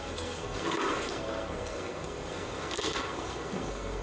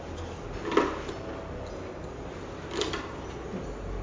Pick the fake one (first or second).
first